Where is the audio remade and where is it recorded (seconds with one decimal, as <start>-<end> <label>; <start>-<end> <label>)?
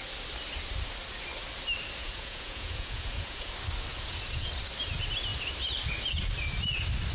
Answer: 0.0-2.0 recorded; 2.0-3.5 remade; 3.5-3.9 recorded; 3.9-4.5 remade; 4.5-7.1 recorded